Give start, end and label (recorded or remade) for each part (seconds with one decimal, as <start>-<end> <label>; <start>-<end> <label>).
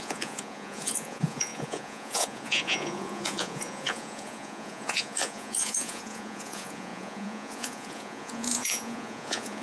0.0-9.6 remade